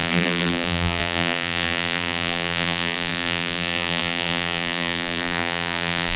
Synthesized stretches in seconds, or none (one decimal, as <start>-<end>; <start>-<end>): 0.0-6.2